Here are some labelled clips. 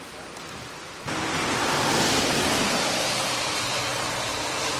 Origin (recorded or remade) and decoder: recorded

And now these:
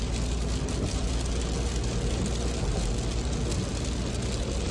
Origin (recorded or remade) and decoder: recorded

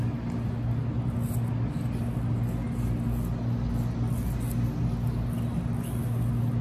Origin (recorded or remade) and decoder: recorded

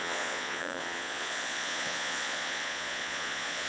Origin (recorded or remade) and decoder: remade, vocoder, Vocos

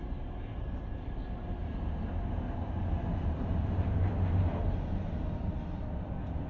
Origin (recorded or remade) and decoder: recorded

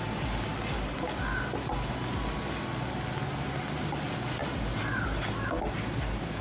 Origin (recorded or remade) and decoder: recorded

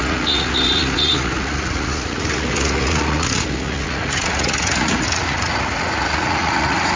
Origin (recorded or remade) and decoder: remade, vocoder, Vocos